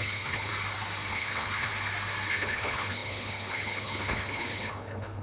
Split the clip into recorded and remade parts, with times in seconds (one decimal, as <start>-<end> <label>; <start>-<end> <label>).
0.0-0.5 remade; 0.5-1.1 recorded; 1.1-1.7 remade; 1.7-2.3 recorded; 2.3-5.2 remade